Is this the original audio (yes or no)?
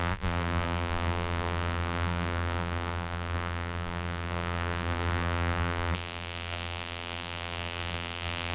no